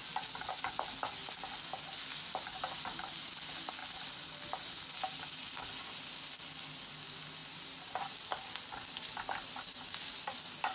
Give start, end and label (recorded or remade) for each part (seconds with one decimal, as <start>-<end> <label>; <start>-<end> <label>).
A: 0.0-10.7 recorded